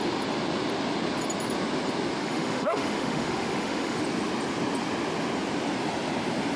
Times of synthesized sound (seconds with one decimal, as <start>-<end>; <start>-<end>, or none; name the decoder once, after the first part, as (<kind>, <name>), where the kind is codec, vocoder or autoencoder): 2.2-4.0 (autoencoder, DAC-VAE)